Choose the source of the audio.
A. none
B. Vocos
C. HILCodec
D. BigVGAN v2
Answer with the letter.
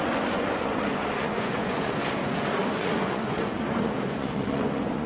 B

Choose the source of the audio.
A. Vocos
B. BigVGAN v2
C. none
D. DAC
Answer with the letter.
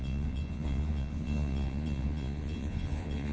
A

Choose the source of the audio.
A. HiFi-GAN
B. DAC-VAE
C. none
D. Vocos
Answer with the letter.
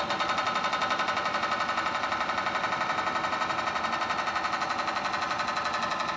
C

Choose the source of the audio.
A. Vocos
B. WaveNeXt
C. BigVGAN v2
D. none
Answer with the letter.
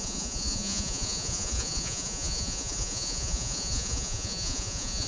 A